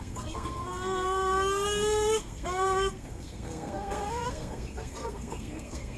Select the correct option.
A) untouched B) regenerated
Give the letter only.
B